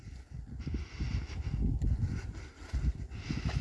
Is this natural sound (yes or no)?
yes